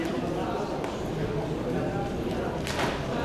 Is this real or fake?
real